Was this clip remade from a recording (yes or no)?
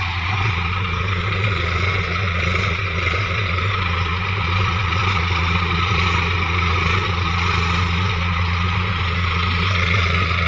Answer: yes